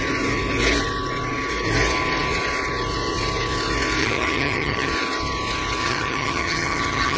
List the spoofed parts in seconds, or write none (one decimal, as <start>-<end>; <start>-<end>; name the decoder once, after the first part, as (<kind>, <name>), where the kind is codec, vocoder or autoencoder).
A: 4.0-4.9 (vocoder, HiFi-GAN); 5.8-7.2